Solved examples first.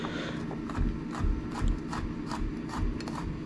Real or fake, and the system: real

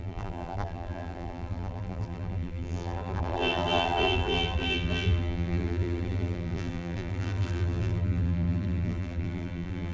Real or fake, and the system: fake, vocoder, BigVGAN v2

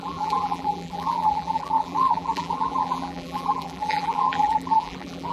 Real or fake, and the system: fake, vocoder, BigVGAN v2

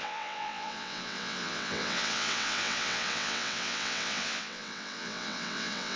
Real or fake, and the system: fake, vocoder, WaveNeXt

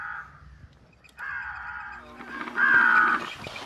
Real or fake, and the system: real